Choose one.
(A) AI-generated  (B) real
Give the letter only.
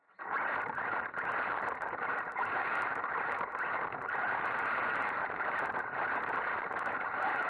A